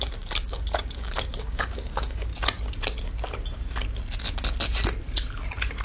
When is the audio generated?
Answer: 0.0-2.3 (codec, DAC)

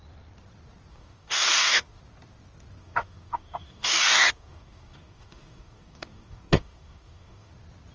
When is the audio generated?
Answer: 0.9-2.0 (codec, DAC); 2.8-7.5

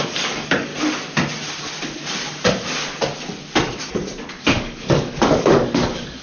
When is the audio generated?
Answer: 0.0-0.7 (codec, DAC); 4.4-6.2

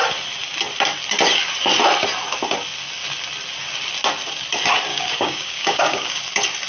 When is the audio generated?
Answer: 4.9-6.2 (codec, DAC)